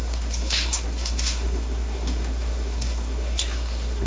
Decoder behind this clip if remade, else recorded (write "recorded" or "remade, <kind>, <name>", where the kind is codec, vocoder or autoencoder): remade, codec, SNAC